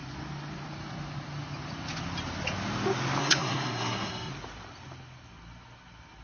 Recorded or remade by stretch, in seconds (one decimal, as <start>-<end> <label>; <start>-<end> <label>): 0.0-3.2 recorded; 3.2-4.3 remade; 4.3-6.2 recorded